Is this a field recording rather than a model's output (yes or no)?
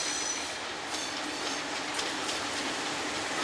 yes